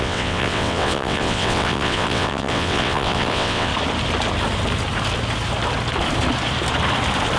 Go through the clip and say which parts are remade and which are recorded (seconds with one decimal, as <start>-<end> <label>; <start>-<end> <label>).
0.0-3.7 remade; 3.7-7.4 recorded